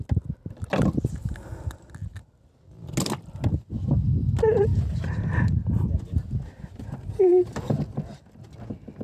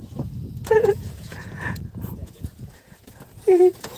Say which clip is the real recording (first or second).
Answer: first